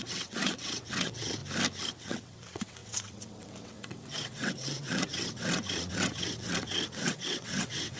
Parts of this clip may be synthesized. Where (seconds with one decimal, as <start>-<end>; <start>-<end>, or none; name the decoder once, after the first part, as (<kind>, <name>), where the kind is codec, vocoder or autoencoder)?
0.0-1.4 (vocoder, WaveNeXt); 1.9-8.0